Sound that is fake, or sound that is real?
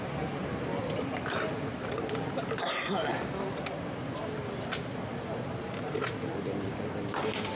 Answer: real